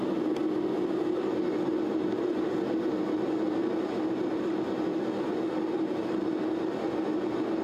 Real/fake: real